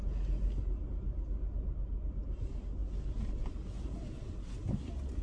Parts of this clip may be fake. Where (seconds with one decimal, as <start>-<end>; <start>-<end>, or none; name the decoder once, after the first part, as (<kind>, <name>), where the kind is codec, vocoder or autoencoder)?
none